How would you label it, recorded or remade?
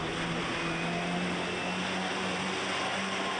recorded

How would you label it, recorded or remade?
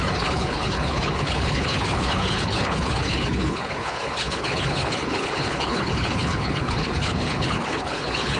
remade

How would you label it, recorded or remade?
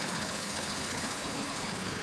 remade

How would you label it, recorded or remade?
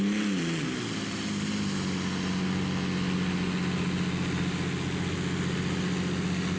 recorded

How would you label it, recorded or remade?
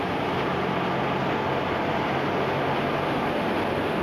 recorded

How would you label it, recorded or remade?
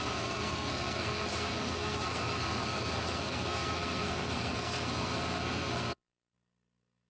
remade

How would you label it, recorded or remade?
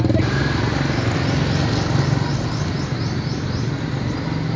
recorded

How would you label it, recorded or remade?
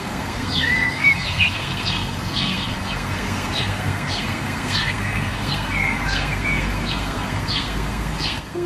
remade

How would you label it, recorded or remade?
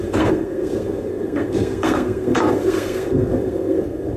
remade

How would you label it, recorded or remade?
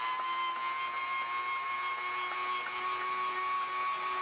recorded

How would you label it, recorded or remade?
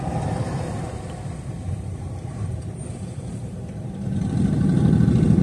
remade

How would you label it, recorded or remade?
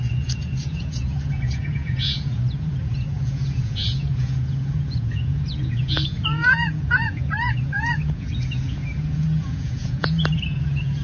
remade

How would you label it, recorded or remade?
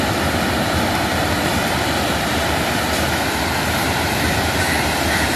recorded